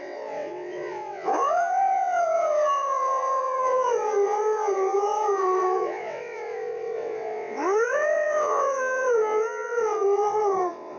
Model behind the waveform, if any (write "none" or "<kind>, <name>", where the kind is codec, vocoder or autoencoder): vocoder, WaveNeXt